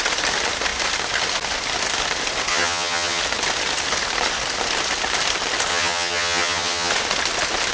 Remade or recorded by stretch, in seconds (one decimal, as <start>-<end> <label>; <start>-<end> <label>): 0.0-2.5 recorded; 2.5-3.2 remade; 3.2-5.7 recorded; 5.7-6.9 remade; 6.9-7.7 recorded